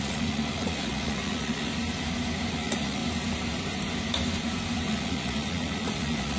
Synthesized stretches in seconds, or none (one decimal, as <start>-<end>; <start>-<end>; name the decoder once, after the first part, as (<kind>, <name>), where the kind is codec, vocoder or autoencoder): 0.0-1.7 (vocoder, Vocos); 2.5-3.0; 4.9-6.4